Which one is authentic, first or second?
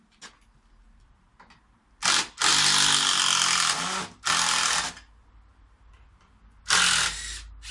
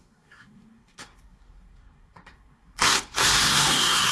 first